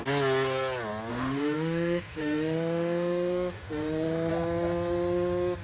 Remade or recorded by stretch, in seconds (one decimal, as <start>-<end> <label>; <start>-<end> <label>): 0.0-1.1 recorded; 1.1-4.3 remade; 4.3-5.6 recorded